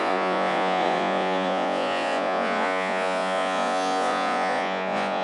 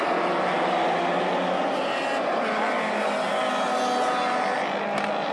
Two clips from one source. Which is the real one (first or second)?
second